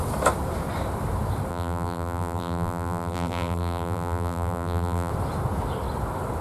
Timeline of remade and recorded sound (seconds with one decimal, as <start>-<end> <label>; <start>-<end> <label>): 0.0-1.5 recorded; 1.5-5.1 remade; 5.1-6.4 recorded